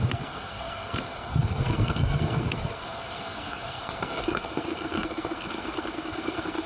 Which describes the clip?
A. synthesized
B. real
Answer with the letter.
A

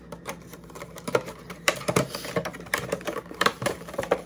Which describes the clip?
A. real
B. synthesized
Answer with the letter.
B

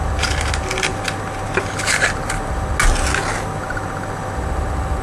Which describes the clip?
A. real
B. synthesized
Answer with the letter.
A